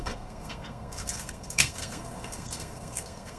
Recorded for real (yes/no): no